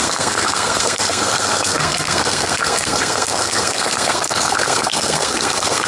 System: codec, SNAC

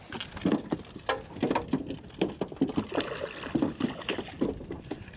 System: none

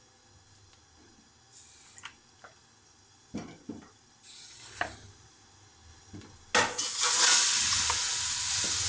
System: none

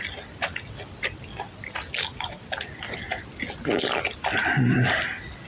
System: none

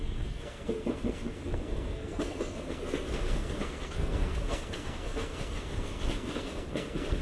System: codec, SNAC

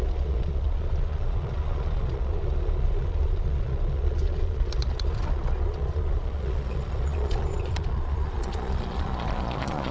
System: vocoder, Vocos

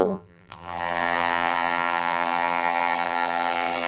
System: vocoder, BigVGAN v2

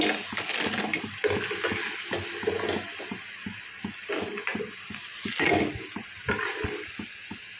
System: none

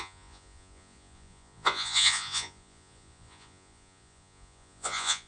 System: vocoder, Vocos